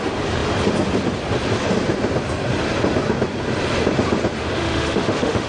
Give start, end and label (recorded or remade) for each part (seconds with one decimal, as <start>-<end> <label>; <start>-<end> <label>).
0.0-4.6 recorded; 4.6-5.5 remade